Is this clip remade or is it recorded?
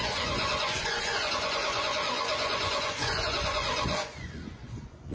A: remade